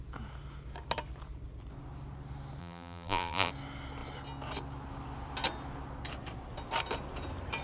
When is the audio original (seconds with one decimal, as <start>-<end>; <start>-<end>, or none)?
0.0-2.6; 3.5-7.6